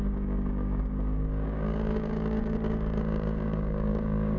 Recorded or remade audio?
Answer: remade